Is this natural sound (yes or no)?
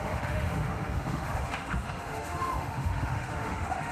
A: no